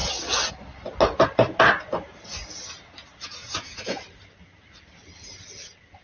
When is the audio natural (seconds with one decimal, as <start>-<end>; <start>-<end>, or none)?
0.0-3.4; 4.0-6.0